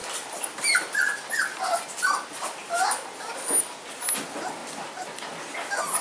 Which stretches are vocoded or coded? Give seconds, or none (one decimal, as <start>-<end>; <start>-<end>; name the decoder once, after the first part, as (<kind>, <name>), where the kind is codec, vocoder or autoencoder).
0.0-3.6 (vocoder, BigVGAN v2)